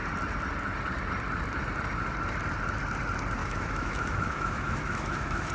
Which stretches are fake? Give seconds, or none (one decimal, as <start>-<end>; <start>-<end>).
3.4-5.5